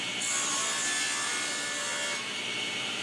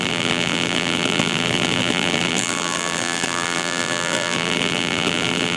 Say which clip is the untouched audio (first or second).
first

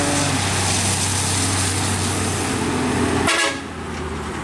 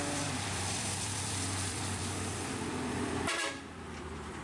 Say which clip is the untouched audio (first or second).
first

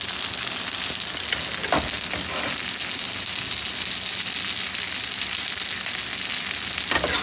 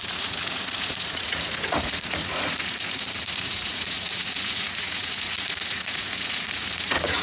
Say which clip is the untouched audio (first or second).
first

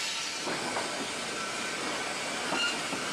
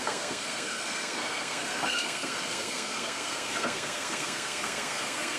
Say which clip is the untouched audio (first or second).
first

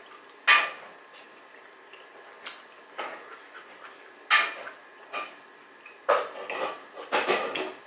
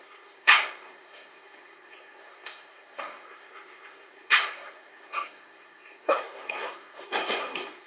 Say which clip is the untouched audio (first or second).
first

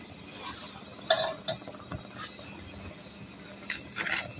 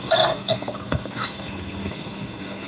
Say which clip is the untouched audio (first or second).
first